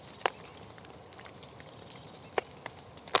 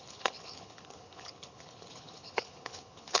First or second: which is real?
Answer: first